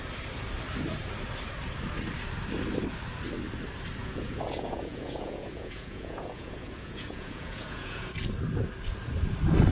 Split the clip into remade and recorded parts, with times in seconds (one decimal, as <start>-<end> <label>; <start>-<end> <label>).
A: 0.0-4.0 recorded; 4.0-8.1 remade; 8.1-9.7 recorded